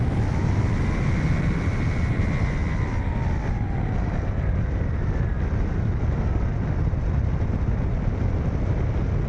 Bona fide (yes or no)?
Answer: yes